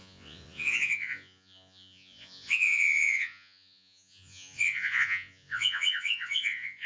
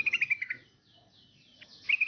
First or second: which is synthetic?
first